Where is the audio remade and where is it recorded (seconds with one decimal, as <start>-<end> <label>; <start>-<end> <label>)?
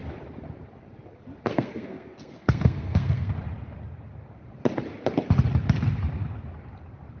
0.0-1.5 recorded; 1.5-3.3 remade; 3.3-7.2 recorded